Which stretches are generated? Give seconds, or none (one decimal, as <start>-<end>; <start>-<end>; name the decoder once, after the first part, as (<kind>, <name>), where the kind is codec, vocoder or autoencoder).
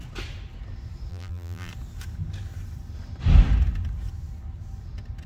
1.1-1.7 (vocoder, BigVGAN v2)